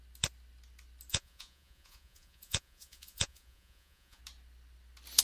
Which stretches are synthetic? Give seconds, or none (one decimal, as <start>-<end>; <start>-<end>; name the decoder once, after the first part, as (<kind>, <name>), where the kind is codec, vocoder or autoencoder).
1.1-4.2 (vocoder, Vocos)